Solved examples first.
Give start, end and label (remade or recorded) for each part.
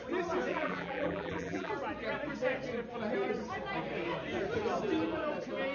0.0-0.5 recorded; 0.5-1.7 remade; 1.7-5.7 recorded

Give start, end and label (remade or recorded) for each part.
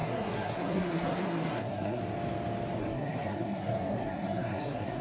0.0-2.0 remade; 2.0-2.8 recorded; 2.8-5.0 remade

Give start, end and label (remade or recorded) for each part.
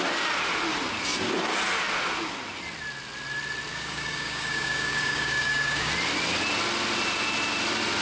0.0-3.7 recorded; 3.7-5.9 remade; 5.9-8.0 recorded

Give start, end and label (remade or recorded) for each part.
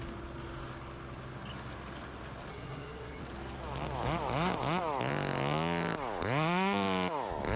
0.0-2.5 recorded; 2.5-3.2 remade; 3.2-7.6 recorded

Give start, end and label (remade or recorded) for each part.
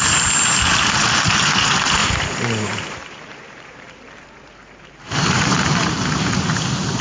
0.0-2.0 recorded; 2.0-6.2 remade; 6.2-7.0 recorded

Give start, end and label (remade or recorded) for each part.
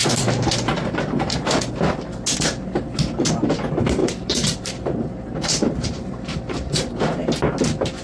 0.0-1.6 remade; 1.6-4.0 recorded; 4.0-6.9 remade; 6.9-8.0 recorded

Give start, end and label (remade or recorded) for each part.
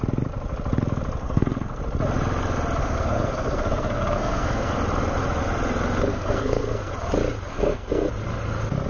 0.0-1.2 recorded; 1.2-1.8 remade; 1.8-2.8 recorded; 2.8-4.7 remade; 4.7-6.1 recorded; 6.1-6.9 remade; 6.9-7.5 recorded; 7.5-8.1 remade; 8.1-8.9 recorded